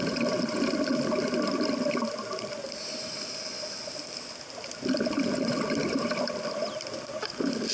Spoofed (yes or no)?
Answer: yes